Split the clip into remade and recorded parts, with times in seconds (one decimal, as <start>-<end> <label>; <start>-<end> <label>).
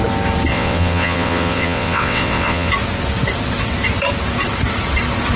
0.0-0.5 recorded; 0.5-2.7 remade; 2.7-5.4 recorded